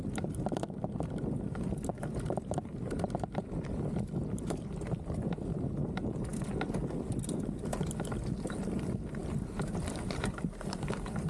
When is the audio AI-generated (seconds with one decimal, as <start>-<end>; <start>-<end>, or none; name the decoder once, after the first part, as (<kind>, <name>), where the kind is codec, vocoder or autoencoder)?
none